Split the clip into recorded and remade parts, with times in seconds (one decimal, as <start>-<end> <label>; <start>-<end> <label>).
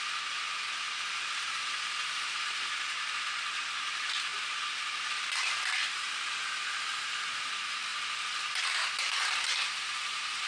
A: 0.0-10.5 recorded